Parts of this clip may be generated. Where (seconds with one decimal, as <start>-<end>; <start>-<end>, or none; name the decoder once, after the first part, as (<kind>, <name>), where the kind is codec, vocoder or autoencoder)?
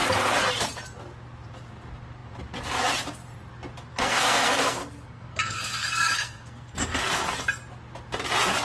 3.9-7.3 (codec, SNAC)